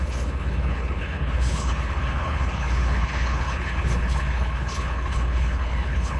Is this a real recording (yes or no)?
no